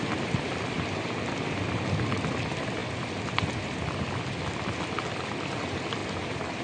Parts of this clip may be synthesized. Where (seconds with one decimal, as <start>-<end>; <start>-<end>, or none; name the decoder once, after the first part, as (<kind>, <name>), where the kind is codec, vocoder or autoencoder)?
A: none